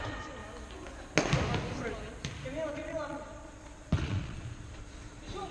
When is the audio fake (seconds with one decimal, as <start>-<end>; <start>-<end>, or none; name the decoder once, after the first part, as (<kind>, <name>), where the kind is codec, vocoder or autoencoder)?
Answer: 0.0-0.4 (vocoder, Vocos); 2.7-5.5